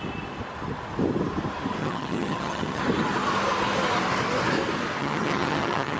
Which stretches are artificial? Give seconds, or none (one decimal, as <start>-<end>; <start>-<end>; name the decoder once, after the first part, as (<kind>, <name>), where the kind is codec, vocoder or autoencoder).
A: 1.8-2.8 (vocoder, HiFi-GAN); 5.0-6.0

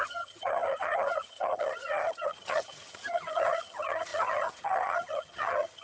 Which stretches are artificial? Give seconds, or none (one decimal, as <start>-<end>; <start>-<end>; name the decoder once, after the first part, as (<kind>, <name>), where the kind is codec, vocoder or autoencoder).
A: 0.0-5.8 (vocoder, HiFi-GAN)